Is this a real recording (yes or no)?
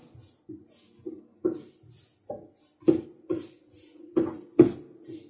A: yes